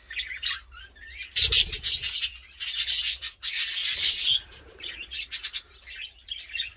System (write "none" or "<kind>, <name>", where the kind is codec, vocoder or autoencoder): none